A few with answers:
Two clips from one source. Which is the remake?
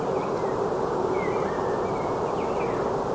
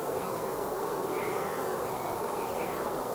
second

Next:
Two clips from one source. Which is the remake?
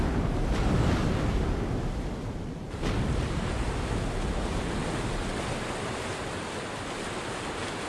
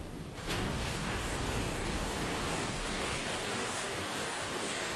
second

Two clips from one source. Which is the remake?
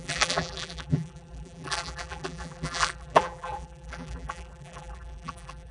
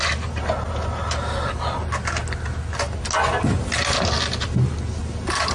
first